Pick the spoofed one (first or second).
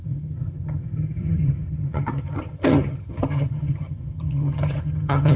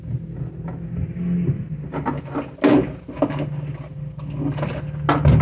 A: first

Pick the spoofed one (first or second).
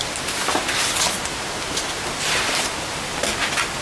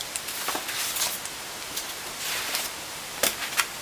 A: second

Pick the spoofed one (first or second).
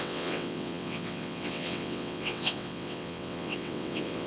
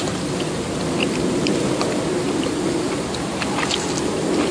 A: first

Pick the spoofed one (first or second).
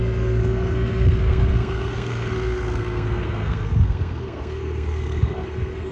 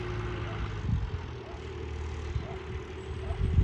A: first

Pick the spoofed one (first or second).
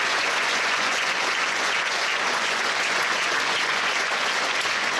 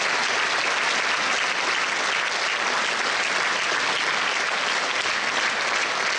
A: first